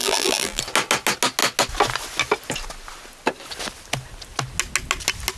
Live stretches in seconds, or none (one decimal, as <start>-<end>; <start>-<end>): 0.6-5.4